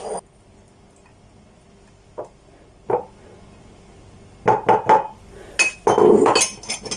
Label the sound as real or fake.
real